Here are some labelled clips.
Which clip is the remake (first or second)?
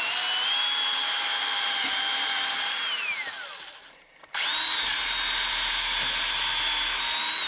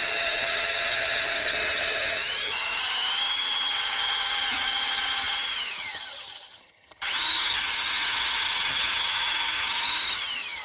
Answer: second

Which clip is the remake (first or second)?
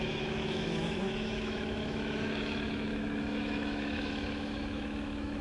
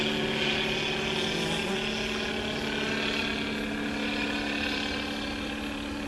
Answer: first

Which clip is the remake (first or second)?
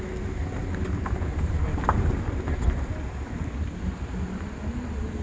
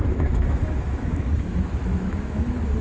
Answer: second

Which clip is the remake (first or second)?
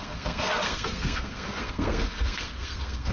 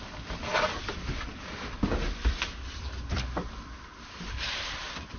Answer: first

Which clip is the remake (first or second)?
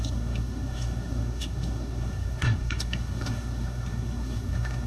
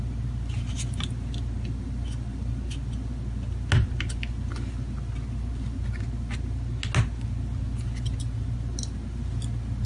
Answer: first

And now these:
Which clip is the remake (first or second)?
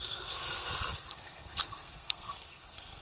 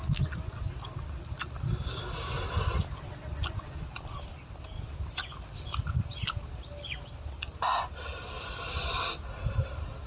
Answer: first